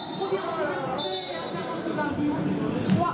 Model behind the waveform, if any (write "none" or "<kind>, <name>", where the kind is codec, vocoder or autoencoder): none